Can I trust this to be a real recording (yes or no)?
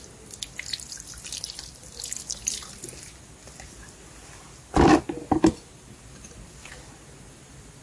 yes